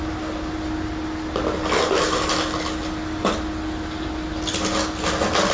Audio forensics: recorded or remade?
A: recorded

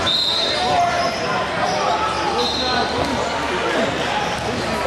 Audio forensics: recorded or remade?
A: recorded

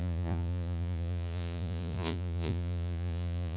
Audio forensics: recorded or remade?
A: remade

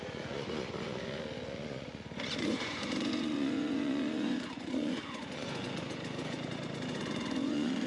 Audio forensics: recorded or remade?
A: remade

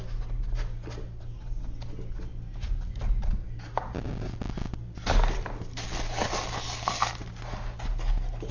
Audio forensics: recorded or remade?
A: recorded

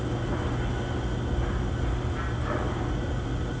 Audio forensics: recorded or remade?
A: recorded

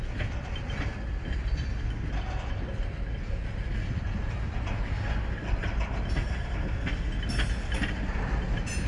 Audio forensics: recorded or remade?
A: recorded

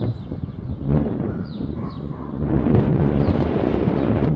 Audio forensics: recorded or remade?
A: remade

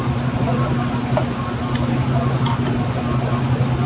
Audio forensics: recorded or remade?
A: recorded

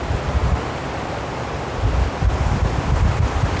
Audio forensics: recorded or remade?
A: recorded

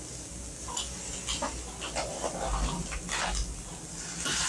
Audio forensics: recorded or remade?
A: recorded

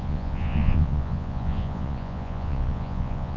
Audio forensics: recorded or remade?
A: remade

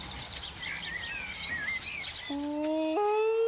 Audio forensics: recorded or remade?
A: recorded